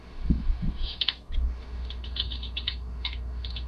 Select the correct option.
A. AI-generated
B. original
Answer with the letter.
A